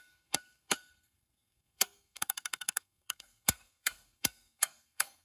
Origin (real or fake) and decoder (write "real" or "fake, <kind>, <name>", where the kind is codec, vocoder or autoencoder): fake, codec, SNAC